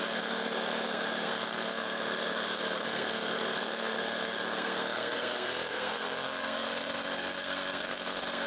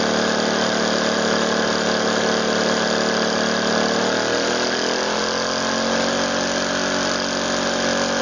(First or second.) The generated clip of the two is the first